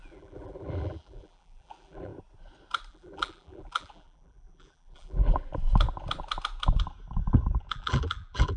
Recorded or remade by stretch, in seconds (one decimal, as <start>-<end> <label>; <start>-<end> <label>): 0.0-2.1 remade; 2.1-2.9 recorded; 2.9-5.5 remade; 5.5-7.7 recorded; 7.7-8.6 remade